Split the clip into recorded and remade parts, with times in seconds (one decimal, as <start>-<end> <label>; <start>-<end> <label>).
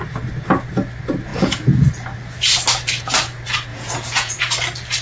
0.0-1.3 recorded; 1.3-1.9 remade; 1.9-3.7 recorded; 3.7-4.4 remade; 4.4-5.0 recorded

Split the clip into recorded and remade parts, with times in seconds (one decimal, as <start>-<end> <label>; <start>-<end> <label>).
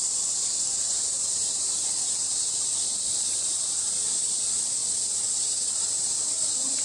0.0-4.8 remade; 4.8-5.7 recorded; 5.7-6.8 remade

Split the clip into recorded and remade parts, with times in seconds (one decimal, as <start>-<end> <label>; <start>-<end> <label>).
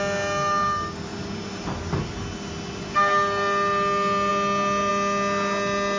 0.0-6.0 recorded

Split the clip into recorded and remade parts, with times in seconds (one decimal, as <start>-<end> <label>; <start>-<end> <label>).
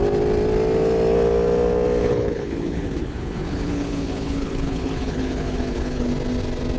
0.0-2.0 recorded; 2.0-6.1 remade; 6.1-6.8 recorded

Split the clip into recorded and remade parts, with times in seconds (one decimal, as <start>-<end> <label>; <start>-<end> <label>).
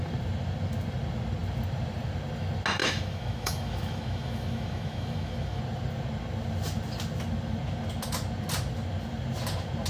0.0-2.8 recorded; 2.8-5.6 remade; 5.6-9.9 recorded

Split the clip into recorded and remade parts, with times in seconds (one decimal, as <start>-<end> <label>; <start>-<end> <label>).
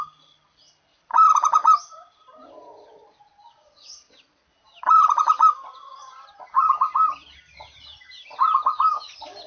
0.0-9.5 recorded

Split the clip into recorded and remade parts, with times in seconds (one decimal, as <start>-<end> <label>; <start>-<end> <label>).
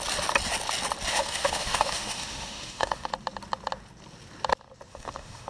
0.0-1.1 recorded; 1.1-3.1 remade; 3.1-4.9 recorded; 4.9-5.5 remade